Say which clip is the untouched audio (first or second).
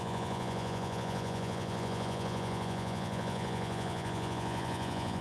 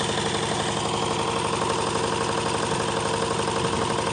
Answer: second